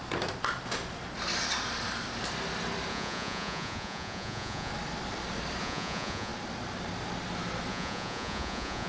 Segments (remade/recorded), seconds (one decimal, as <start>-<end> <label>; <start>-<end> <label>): 0.0-2.9 recorded; 2.9-4.7 remade; 4.7-5.6 recorded; 5.6-6.3 remade; 6.3-7.7 recorded; 7.7-8.9 remade